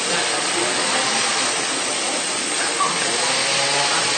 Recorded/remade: recorded